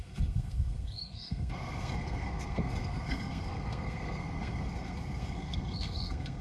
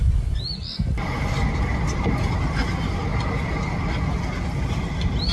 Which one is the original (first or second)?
second